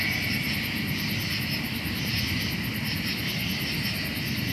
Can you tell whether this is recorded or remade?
recorded